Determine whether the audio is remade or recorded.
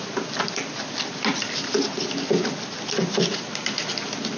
recorded